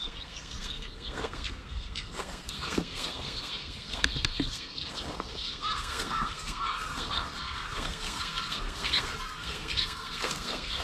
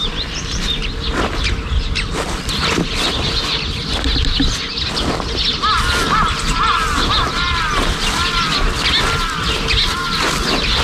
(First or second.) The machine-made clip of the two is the first